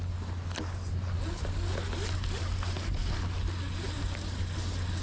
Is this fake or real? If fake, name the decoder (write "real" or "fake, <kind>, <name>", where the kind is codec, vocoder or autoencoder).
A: real